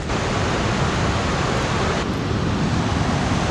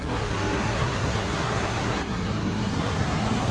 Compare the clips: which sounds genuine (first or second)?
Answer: first